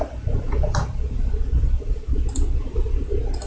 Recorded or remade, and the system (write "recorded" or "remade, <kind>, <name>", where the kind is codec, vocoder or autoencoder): recorded